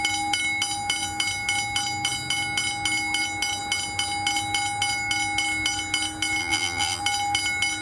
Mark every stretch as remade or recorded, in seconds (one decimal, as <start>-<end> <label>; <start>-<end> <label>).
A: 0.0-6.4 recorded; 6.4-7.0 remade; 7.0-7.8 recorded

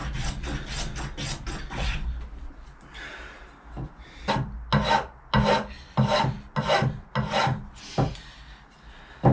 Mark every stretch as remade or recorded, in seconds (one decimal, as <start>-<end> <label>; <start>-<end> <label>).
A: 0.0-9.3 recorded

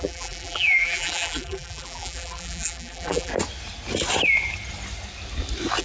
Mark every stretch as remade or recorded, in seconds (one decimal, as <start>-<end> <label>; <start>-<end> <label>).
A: 0.0-3.3 remade; 3.3-5.8 recorded

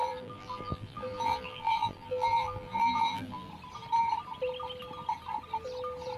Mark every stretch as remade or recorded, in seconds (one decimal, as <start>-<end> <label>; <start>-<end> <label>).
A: 0.0-3.5 remade; 3.5-6.2 recorded